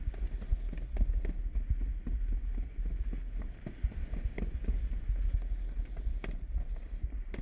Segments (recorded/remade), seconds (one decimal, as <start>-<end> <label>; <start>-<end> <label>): 0.0-7.4 recorded